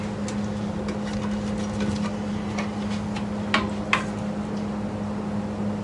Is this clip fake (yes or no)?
no